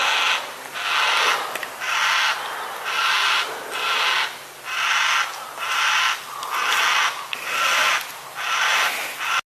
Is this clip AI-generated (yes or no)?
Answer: no